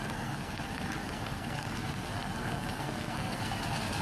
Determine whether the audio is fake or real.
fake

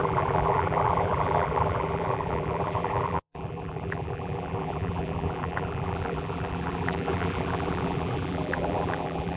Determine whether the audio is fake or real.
fake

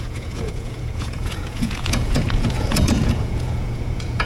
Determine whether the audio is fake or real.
fake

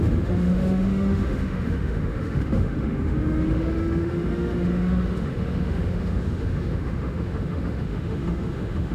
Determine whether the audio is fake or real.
fake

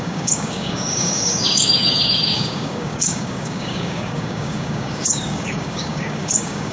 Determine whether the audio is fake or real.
fake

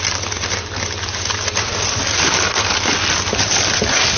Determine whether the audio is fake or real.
real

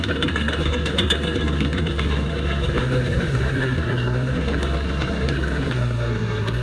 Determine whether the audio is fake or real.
fake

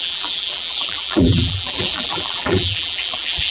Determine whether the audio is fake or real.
fake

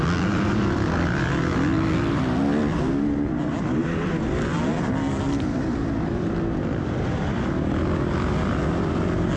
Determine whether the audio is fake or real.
real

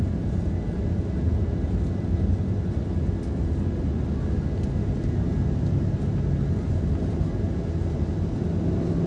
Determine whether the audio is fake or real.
real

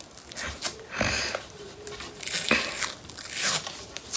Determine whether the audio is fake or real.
real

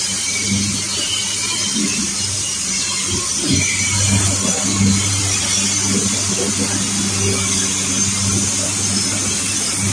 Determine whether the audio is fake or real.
real